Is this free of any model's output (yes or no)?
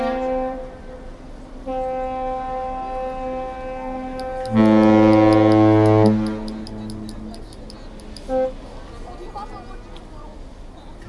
yes